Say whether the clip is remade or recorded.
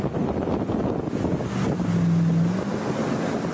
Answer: recorded